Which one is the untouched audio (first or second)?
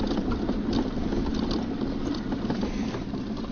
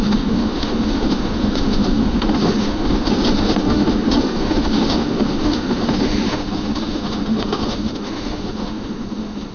first